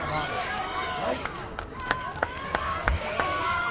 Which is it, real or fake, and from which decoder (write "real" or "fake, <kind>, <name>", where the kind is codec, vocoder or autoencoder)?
fake, codec, DAC